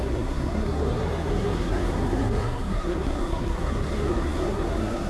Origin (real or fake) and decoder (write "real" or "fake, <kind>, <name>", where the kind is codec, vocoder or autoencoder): fake, codec, SNAC